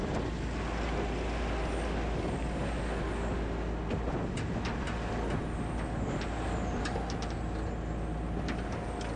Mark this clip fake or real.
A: real